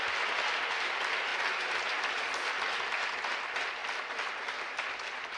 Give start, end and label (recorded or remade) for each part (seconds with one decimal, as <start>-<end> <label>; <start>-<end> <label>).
0.0-5.4 recorded